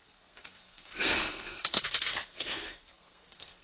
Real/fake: fake